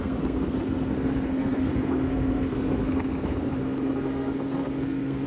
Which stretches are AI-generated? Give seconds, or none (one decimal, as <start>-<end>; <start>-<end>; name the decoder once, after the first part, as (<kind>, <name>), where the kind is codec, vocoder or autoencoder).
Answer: 0.0-5.3 (codec, SNAC)